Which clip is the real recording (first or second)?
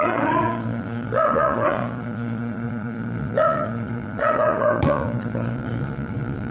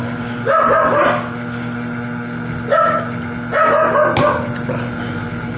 second